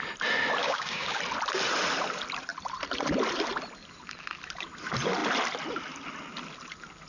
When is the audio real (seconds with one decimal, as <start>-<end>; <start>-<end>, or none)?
0.0-0.6; 1.2-7.1